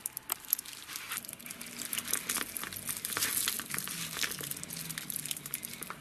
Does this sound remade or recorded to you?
recorded